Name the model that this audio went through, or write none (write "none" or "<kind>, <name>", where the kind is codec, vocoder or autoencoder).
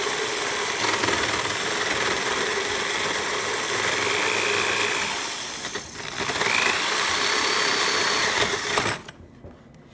none